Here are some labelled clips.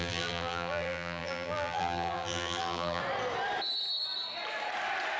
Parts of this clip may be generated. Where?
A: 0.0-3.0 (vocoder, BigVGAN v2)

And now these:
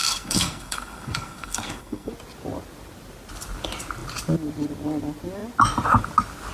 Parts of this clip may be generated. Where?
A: 0.0-2.1 (codec, SNAC)

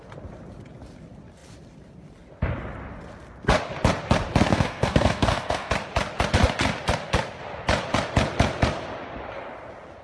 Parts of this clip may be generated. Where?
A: 4.5-5.7 (codec, SNAC)

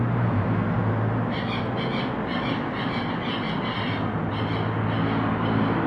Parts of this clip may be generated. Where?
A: none

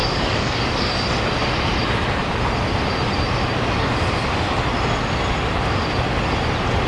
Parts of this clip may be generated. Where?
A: 0.0-0.9 (codec, DAC)

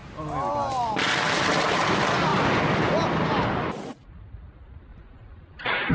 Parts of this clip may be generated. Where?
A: 4.9-5.9 (vocoder, Vocos)

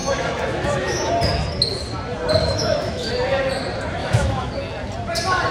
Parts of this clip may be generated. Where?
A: 0.0-1.1 (autoencoder, DAC-VAE); 2.4-3.1; 4.0-4.5

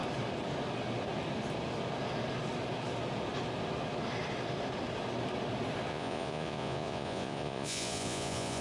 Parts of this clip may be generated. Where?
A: 5.9-8.6 (vocoder, Vocos)